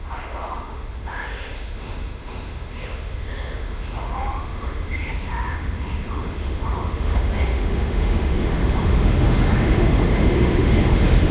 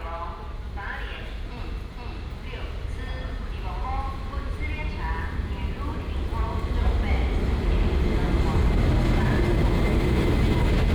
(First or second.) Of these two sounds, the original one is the second